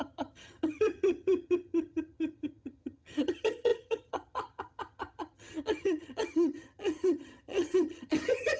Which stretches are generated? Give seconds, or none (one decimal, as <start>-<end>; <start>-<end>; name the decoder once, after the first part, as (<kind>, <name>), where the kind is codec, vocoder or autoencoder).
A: 0.0-8.6 (vocoder, HiFi-GAN)